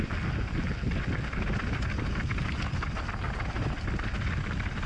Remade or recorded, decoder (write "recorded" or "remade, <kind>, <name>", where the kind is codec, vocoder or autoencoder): recorded